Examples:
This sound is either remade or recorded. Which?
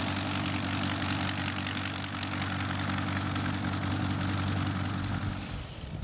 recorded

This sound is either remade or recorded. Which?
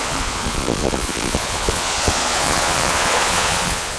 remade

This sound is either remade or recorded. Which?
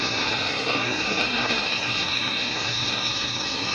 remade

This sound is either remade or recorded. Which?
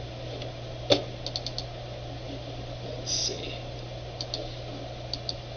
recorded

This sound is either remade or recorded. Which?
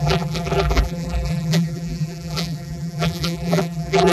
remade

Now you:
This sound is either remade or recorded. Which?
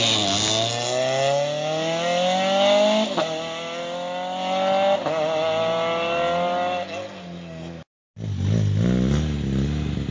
recorded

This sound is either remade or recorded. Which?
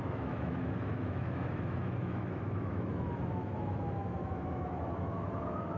remade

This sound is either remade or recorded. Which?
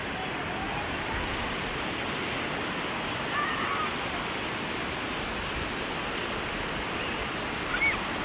recorded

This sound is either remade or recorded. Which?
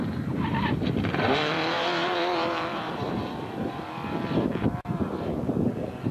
remade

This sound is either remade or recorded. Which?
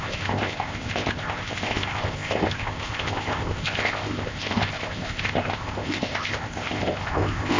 remade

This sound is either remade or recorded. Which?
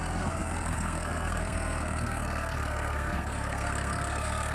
remade